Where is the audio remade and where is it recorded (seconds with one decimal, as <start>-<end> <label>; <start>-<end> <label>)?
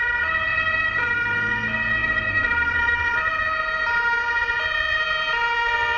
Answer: 0.0-0.5 recorded; 0.5-1.1 remade; 1.1-2.0 recorded; 2.0-3.4 remade; 3.4-6.0 recorded